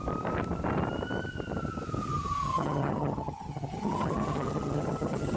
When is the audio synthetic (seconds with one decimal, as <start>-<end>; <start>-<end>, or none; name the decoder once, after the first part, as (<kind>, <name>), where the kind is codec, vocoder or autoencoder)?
2.1-5.4 (vocoder, HiFi-GAN)